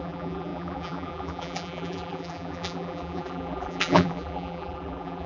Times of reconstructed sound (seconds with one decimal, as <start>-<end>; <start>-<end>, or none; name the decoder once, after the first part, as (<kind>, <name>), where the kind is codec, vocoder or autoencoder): 0.0-5.3 (vocoder, BigVGAN v2)